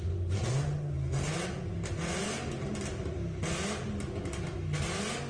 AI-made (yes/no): no